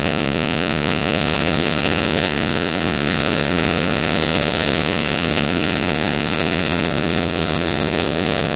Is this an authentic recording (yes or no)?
no